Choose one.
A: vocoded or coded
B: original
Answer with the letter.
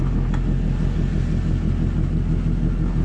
B